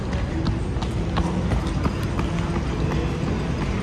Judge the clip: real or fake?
real